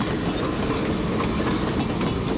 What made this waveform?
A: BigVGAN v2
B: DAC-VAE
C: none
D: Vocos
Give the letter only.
C